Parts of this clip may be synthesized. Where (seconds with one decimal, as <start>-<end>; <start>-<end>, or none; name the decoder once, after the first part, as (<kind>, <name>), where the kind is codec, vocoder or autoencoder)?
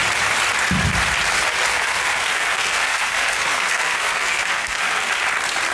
1.7-5.1 (codec, SNAC)